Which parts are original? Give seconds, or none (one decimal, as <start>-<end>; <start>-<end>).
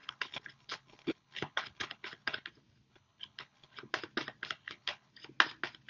2.5-2.9; 3.9-4.4; 5.1-5.9